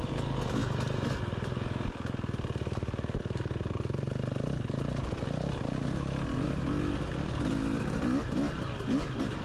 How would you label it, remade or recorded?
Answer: recorded